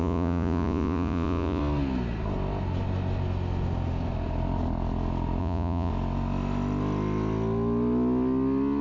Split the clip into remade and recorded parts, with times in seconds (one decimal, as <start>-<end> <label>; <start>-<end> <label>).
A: 0.0-1.6 remade; 1.6-5.4 recorded; 5.4-5.9 remade; 5.9-8.8 recorded